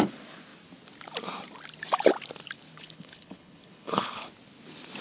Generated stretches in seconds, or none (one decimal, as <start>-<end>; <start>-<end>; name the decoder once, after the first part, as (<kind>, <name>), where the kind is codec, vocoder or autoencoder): 2.7-4.3 (codec, HILCodec)